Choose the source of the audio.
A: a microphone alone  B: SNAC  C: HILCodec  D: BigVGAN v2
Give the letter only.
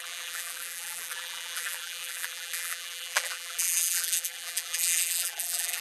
D